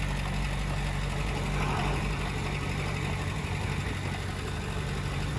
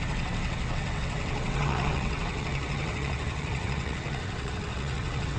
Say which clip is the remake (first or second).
second